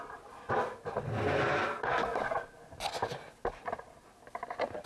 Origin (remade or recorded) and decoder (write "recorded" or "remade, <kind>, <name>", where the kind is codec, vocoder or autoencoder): recorded